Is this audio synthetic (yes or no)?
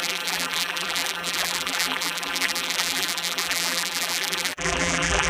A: yes